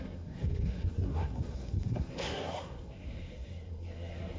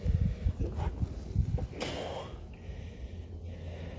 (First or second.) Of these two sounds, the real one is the second